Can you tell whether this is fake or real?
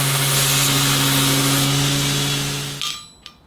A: real